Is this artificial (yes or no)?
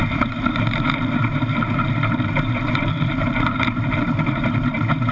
yes